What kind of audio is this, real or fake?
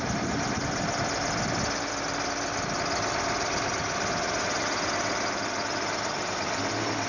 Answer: real